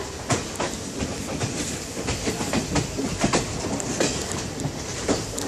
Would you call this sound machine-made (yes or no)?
no